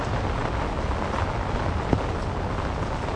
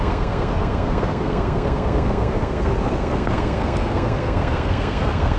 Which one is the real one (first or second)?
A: first